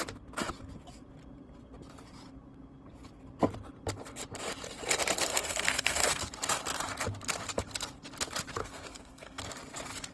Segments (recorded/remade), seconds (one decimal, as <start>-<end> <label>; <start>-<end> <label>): 0.0-5.3 recorded; 5.3-6.2 remade; 6.2-8.6 recorded; 8.6-9.4 remade; 9.4-10.1 recorded